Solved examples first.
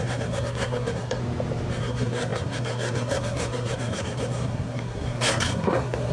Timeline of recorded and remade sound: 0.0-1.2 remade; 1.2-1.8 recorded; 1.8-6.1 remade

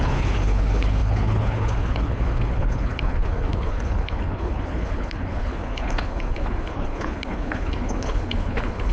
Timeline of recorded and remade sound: 0.0-8.9 remade

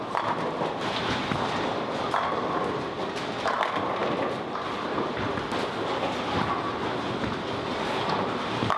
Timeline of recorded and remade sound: 0.0-8.8 recorded

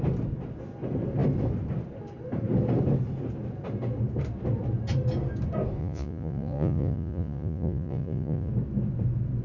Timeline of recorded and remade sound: 0.0-5.8 recorded; 5.8-8.5 remade; 8.5-9.4 recorded

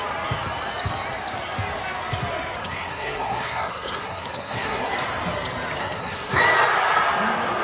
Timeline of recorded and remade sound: 0.0-2.6 recorded; 2.6-4.9 remade; 4.9-5.8 recorded; 5.8-6.4 remade; 6.4-7.6 recorded

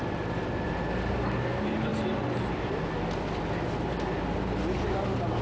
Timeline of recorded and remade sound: 0.0-5.4 recorded